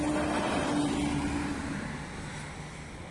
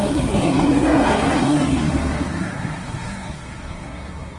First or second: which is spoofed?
second